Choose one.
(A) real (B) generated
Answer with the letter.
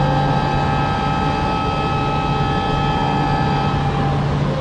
A